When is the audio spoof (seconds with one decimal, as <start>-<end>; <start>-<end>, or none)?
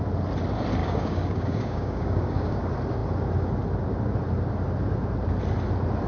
0.8-2.6